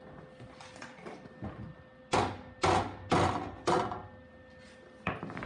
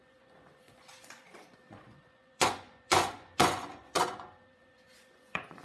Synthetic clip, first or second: second